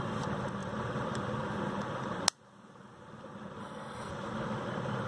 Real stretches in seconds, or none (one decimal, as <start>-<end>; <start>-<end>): 0.0-3.6; 4.1-5.1